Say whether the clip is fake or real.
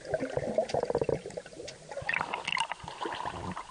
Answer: real